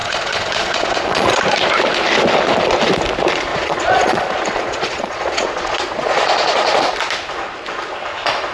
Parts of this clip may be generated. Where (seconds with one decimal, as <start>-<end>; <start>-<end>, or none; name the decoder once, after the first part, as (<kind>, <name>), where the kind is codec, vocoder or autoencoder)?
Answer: 0.0-1.4 (vocoder, Vocos); 3.5-6.8